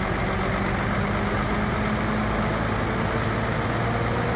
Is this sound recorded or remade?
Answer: recorded